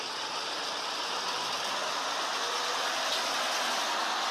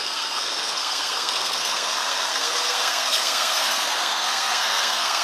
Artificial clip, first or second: second